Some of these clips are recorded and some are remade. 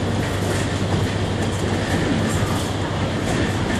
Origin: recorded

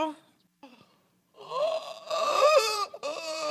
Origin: remade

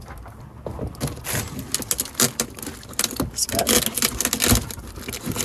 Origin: recorded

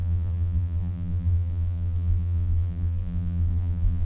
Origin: remade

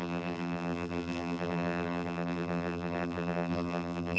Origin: remade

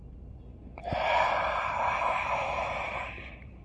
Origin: recorded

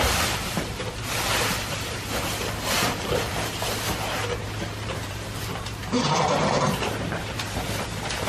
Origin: remade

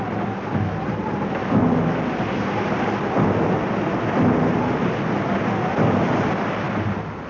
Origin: recorded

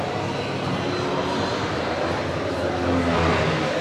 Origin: recorded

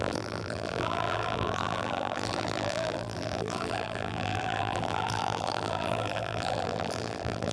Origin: remade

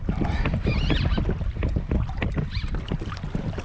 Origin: recorded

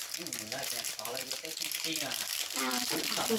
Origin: remade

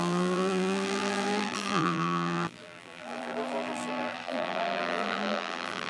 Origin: remade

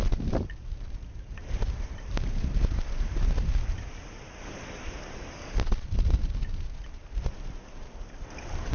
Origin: remade